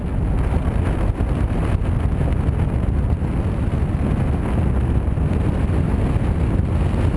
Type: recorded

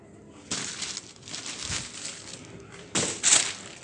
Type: recorded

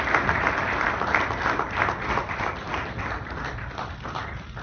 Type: recorded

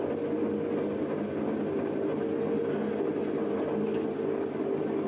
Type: recorded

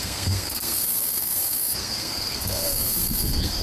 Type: remade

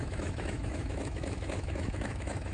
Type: remade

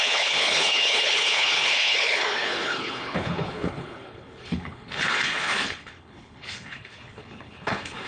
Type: remade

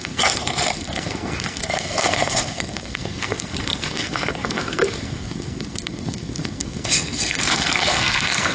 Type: remade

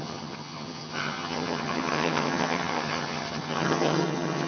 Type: remade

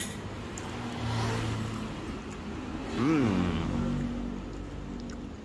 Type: recorded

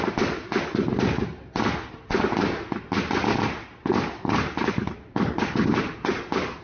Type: recorded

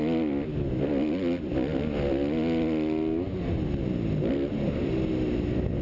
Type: recorded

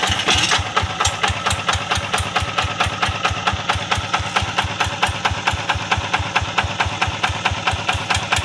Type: recorded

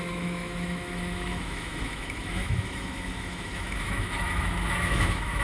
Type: remade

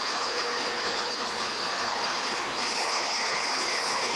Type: remade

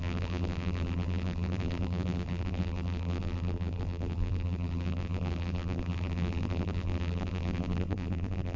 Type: remade